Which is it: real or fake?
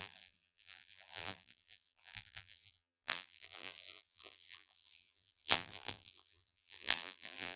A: fake